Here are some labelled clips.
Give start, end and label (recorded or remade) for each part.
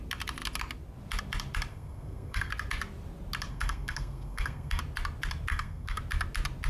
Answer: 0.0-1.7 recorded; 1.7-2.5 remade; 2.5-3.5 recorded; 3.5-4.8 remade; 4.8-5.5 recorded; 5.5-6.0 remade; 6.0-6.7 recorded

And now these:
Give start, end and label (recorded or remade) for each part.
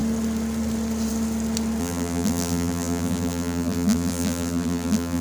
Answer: 0.0-1.8 recorded; 1.8-5.2 remade